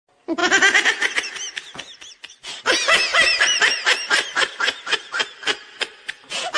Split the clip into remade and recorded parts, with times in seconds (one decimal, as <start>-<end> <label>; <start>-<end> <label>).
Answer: 0.0-3.1 recorded; 3.1-5.2 remade; 5.2-6.6 recorded